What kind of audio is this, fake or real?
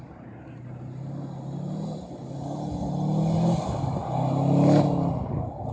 real